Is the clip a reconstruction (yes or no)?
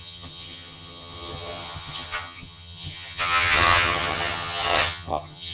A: yes